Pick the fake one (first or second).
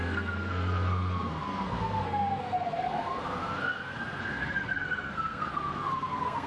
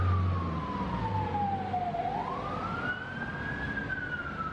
first